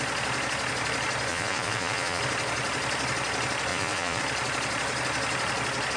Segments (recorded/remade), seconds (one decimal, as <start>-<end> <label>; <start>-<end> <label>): 0.0-1.3 recorded; 1.3-2.2 remade; 2.2-3.7 recorded; 3.7-4.2 remade; 4.2-6.0 recorded